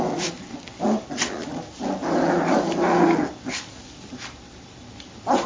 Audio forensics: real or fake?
real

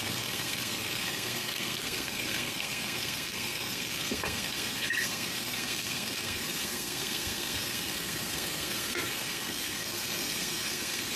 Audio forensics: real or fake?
fake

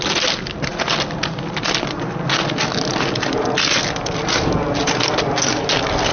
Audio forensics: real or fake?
real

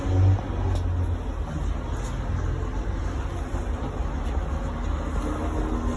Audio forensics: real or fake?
real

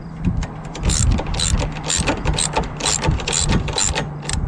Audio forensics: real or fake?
real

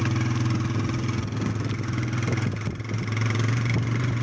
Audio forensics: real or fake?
real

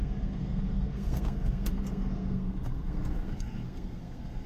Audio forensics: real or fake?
fake